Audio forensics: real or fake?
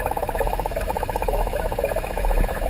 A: fake